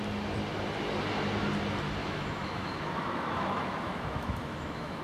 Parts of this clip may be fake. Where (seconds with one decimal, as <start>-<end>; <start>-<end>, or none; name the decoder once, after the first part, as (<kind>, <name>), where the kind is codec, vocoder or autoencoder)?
2.0-5.0 (autoencoder, DAC-VAE)